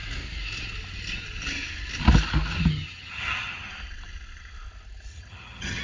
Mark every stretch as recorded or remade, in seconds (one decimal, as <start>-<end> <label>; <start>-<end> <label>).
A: 0.0-2.7 recorded; 2.7-3.7 remade; 3.7-5.1 recorded; 5.1-5.8 remade